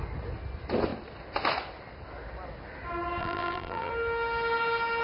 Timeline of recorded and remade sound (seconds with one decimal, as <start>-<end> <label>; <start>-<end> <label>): 0.0-3.2 recorded; 3.2-3.9 remade; 3.9-5.0 recorded